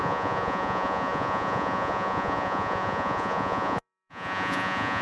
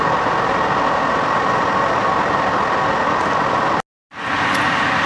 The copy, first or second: first